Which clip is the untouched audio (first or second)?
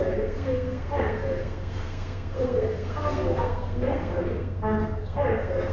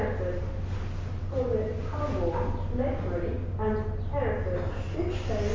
second